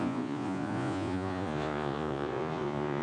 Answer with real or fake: fake